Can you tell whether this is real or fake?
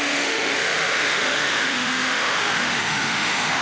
fake